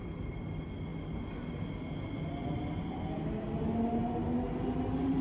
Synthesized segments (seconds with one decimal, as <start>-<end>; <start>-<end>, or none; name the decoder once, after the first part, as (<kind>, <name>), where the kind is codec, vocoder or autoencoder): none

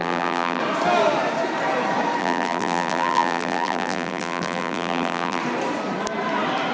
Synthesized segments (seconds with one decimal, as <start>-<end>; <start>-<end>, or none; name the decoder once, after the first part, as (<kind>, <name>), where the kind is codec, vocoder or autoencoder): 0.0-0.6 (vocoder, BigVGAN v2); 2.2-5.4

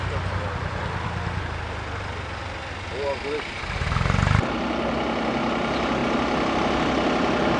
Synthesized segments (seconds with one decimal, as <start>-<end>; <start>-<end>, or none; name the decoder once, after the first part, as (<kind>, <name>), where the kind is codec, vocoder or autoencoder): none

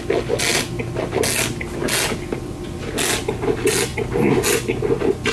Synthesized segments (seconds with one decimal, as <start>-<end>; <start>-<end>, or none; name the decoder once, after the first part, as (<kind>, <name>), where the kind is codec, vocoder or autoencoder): none